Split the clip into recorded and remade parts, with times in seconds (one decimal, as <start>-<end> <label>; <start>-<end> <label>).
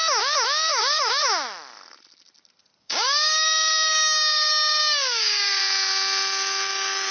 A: 0.0-0.7 recorded; 0.7-1.2 remade; 1.2-2.8 recorded; 2.8-5.6 remade; 5.6-7.1 recorded